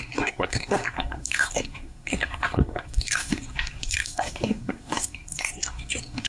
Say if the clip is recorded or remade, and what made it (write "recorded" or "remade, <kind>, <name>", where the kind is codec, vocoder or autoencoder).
remade, codec, SNAC